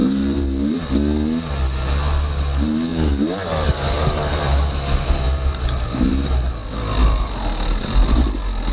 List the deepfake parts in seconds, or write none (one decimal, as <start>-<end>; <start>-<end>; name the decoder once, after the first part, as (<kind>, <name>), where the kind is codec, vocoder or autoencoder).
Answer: 0.0-0.8 (vocoder, BigVGAN v2); 2.9-6.1

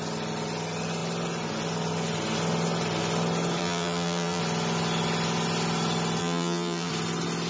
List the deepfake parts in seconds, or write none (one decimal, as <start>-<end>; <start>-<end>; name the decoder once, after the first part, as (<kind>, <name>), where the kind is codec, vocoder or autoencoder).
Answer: 3.6-4.4 (vocoder, BigVGAN v2); 6.2-6.9

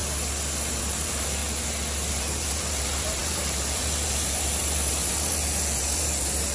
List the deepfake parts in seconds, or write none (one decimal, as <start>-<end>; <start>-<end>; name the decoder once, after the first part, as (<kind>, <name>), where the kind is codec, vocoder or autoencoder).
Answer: 0.8-1.4 (vocoder, BigVGAN v2); 2.1-6.5

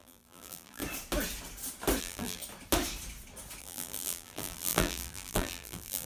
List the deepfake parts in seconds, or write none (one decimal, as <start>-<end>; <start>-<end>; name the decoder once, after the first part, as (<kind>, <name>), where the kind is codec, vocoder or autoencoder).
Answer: 0.0-0.8 (vocoder, BigVGAN v2); 2.0-2.4; 3.6-6.0

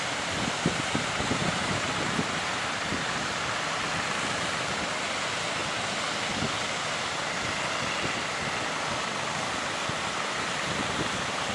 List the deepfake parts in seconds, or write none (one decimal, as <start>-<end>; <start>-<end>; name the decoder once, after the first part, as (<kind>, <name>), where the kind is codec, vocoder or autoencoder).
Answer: 1.4-1.9 (vocoder, BigVGAN v2)

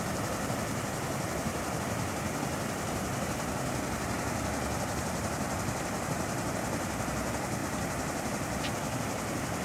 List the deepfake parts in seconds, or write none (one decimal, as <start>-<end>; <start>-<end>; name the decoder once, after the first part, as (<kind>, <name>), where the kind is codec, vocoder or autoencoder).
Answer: 7.6-8.7 (vocoder, BigVGAN v2)